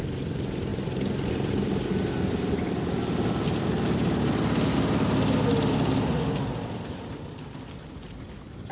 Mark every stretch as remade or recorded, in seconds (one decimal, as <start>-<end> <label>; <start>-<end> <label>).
0.0-8.7 recorded